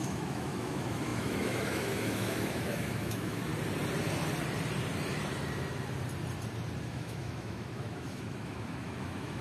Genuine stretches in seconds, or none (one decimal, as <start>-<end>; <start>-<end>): 3.5-6.9